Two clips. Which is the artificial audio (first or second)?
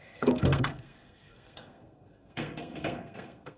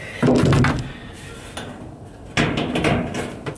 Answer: first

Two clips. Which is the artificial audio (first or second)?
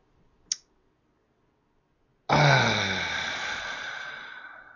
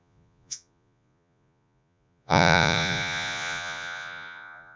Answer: second